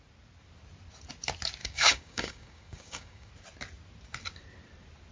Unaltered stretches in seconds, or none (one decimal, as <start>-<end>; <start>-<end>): 0.0-1.6; 3.3-5.1